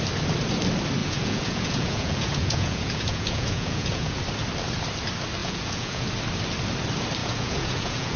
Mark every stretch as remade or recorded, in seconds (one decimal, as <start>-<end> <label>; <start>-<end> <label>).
0.0-1.0 recorded; 1.0-4.2 remade; 4.2-5.4 recorded; 5.4-6.1 remade; 6.1-7.2 recorded; 7.2-8.2 remade